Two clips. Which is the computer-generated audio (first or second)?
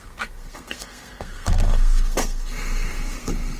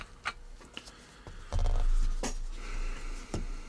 first